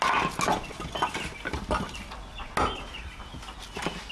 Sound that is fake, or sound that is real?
real